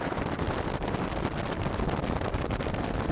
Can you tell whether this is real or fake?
real